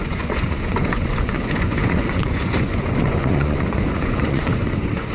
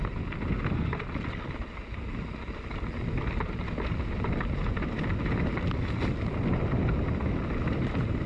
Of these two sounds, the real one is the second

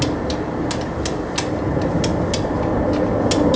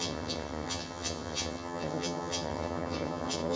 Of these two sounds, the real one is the first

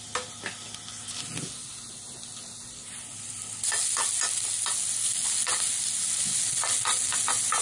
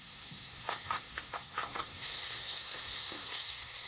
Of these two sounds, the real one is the first